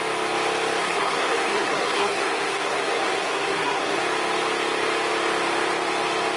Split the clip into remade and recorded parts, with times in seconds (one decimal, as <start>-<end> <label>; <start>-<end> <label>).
0.0-0.8 recorded; 0.8-4.0 remade; 4.0-6.4 recorded